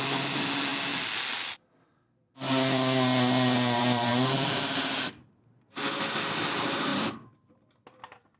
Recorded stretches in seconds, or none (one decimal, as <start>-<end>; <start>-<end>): 0.0-6.9; 7.5-8.4